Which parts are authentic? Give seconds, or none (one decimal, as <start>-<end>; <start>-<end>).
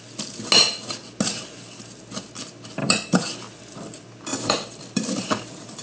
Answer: 0.0-2.8; 3.6-4.3